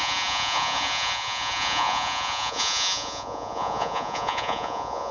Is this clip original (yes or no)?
no